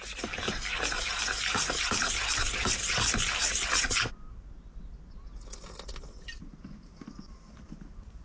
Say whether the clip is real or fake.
real